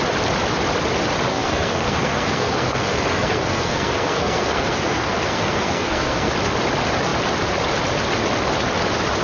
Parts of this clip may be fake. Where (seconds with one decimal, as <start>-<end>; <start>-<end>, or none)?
1.3-6.3